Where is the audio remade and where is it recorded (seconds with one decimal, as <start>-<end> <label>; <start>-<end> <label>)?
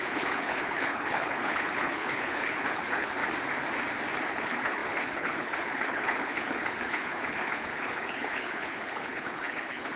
0.0-3.2 remade; 3.2-4.3 recorded; 4.3-10.0 remade